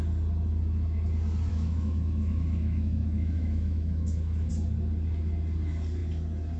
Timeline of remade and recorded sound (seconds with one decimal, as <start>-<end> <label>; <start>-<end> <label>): 0.0-1.5 recorded; 1.5-4.5 remade; 4.5-6.6 recorded